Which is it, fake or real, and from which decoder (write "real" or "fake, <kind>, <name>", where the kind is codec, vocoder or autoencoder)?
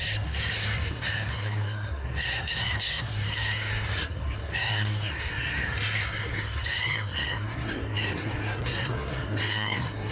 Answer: fake, codec, SNAC